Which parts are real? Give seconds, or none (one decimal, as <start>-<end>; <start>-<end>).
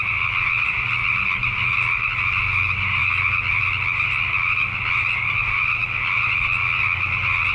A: 0.0-7.5